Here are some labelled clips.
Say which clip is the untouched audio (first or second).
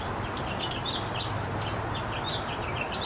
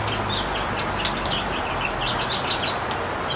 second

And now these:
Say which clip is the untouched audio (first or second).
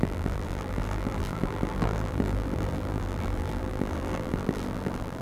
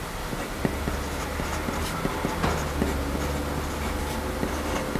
second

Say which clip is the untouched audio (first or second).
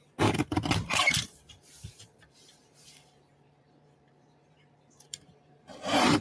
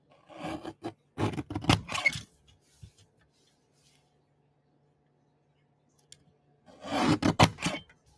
second